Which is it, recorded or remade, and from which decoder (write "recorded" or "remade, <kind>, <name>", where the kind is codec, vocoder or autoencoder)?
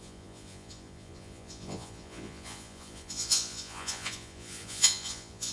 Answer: remade, vocoder, Vocos